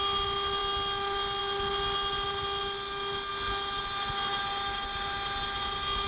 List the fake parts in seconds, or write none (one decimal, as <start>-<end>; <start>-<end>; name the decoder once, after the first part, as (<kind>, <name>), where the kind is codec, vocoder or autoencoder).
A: none

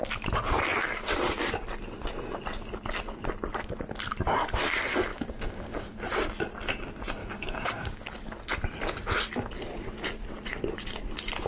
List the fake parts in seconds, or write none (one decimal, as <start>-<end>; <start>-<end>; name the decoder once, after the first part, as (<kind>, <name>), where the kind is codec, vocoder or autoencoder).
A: 5.1-5.9 (codec, DAC); 7.2-8.0

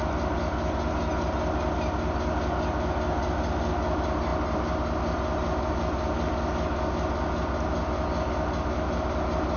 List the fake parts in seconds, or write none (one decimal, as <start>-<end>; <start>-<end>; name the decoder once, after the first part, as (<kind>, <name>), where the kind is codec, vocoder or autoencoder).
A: none